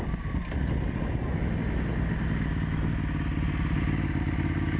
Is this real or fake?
real